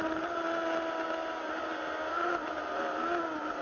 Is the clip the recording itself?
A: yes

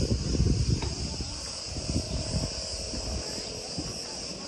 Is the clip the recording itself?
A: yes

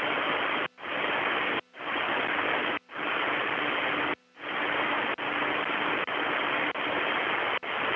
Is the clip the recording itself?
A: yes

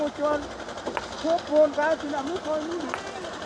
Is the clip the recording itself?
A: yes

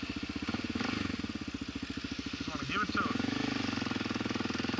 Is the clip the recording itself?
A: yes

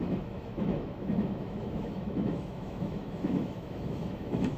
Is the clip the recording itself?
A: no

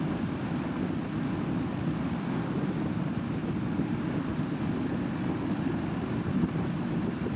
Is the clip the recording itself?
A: yes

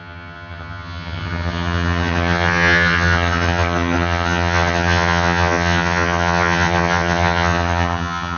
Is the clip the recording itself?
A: no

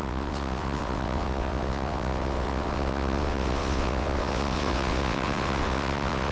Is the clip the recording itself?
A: no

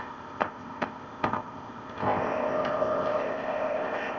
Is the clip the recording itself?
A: no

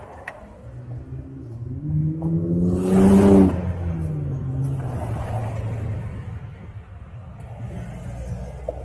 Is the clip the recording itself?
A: yes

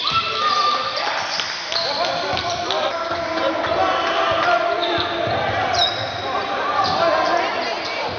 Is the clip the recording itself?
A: no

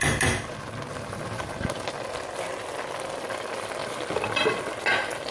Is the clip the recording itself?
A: yes